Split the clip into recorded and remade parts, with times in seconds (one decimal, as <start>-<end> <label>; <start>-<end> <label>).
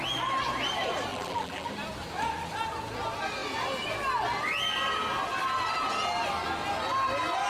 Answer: 0.0-1.1 recorded; 1.1-1.7 remade; 1.7-7.5 recorded